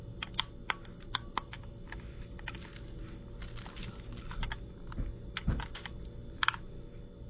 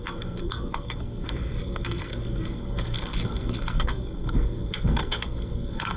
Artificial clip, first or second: second